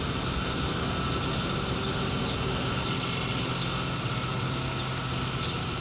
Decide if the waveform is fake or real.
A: real